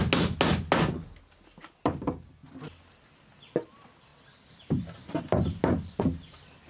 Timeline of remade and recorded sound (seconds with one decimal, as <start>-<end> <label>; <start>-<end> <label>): 0.0-6.7 recorded